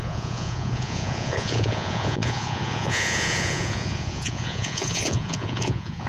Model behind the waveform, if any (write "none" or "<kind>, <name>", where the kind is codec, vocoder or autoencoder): vocoder, Vocos